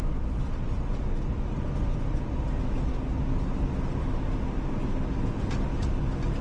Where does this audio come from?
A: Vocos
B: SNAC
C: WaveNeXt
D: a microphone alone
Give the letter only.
D